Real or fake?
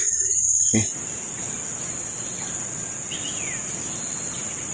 real